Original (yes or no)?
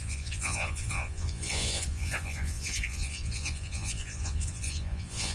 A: no